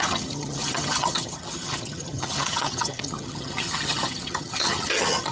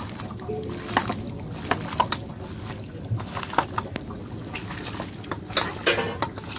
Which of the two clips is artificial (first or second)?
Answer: first